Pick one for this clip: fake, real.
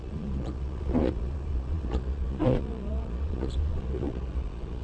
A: fake